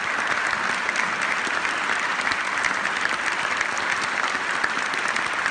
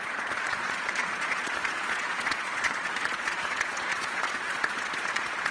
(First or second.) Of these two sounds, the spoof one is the second